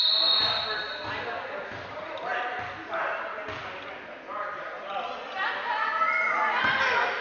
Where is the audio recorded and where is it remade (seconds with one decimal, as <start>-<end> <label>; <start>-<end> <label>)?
0.0-7.2 recorded

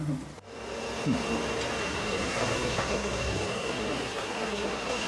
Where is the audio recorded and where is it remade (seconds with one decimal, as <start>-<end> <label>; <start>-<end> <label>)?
0.0-1.8 recorded; 1.8-5.1 remade

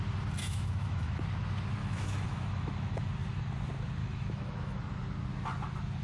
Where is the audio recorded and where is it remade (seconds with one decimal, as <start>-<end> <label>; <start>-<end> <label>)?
0.0-0.4 recorded; 0.4-1.2 remade; 1.2-1.8 recorded; 1.8-3.1 remade; 3.1-4.0 recorded; 4.0-4.8 remade; 4.8-6.0 recorded

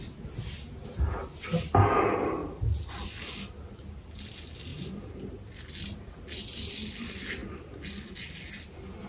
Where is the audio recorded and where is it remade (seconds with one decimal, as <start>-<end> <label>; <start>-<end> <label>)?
0.0-4.7 recorded; 4.7-5.6 remade; 5.6-9.1 recorded

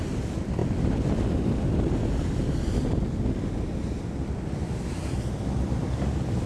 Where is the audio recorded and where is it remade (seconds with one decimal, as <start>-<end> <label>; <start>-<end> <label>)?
0.0-6.5 recorded